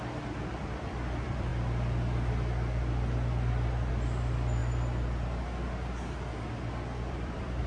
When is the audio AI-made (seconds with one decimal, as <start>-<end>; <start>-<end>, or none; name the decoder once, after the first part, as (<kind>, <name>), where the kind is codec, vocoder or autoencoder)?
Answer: 0.0-1.5 (vocoder, BigVGAN v2); 3.9-4.6; 7.1-7.7